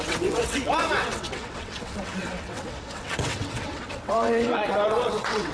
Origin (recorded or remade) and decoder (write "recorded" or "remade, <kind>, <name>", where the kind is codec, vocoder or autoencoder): remade, vocoder, WaveNeXt